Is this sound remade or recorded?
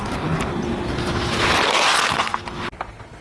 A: recorded